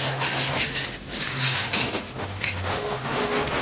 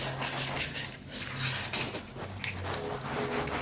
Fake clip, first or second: first